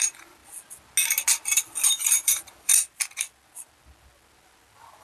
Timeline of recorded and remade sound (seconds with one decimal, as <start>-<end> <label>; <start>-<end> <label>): 0.0-0.4 remade; 0.4-1.9 recorded; 1.9-2.7 remade; 2.7-5.0 recorded